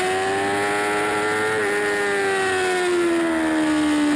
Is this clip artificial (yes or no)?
no